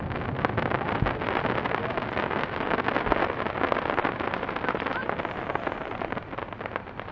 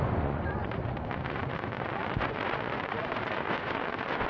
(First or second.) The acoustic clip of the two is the first